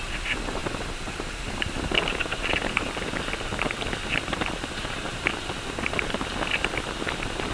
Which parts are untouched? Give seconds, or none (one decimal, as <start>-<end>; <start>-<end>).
0.0-7.5